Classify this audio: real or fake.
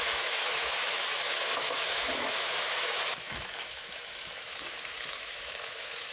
fake